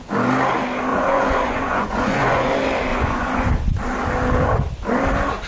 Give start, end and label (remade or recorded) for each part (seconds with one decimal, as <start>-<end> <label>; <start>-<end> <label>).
0.0-0.9 recorded; 0.9-2.5 remade; 2.5-2.9 recorded; 2.9-3.5 remade; 3.5-5.5 recorded